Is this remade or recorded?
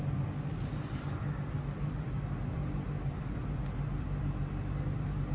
remade